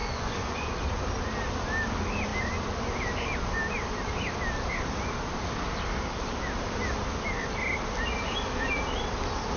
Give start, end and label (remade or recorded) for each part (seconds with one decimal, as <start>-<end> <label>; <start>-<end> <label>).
0.0-0.7 remade; 0.7-9.6 recorded